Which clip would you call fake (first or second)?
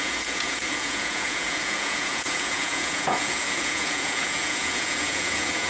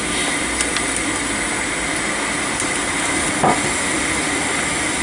first